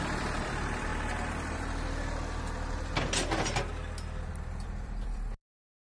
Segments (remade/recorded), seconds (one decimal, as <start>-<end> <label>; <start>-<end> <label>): 0.0-0.9 remade; 0.9-4.4 recorded; 4.4-5.9 remade